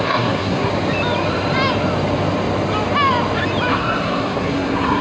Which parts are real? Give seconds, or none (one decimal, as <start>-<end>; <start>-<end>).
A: 0.7-3.7